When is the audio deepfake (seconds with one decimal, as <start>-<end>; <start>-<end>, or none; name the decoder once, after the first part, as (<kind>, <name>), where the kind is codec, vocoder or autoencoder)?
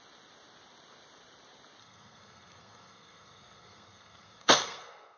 1.8-5.2 (codec, SNAC)